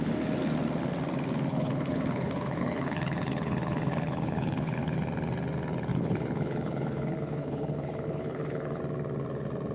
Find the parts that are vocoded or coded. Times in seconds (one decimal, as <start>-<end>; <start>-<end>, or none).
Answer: 1.5-5.0; 5.9-8.8